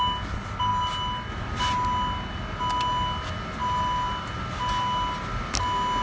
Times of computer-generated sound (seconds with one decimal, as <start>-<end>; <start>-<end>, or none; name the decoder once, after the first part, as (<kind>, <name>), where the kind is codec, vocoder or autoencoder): none